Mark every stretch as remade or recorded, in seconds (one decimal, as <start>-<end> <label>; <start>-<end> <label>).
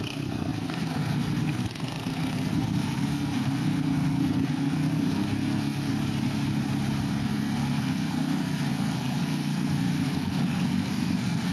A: 0.0-5.9 remade; 5.9-7.1 recorded; 7.1-11.5 remade